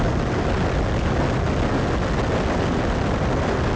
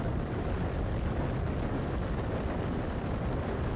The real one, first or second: first